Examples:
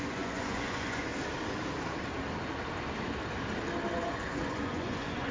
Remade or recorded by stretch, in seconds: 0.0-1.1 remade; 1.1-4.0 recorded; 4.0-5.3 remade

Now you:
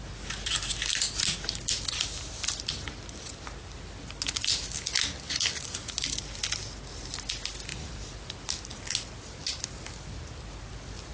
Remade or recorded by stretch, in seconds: 0.0-11.1 recorded

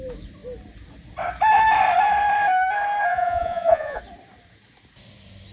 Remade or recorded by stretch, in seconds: 0.0-3.1 recorded; 3.1-4.0 remade; 4.0-5.5 recorded

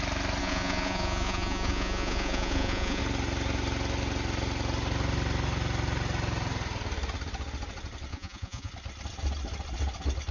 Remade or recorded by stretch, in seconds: 0.0-0.4 recorded; 0.4-3.0 remade; 3.0-8.1 recorded; 8.1-8.7 remade; 8.7-10.3 recorded

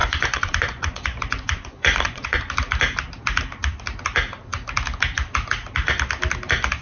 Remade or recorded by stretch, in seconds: 0.0-2.5 remade; 2.5-6.8 recorded

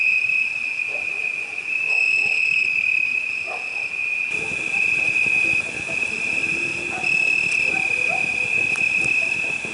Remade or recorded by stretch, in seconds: 0.0-0.6 recorded; 0.6-2.8 remade; 2.8-9.7 recorded